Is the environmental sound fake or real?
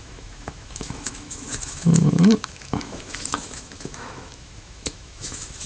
fake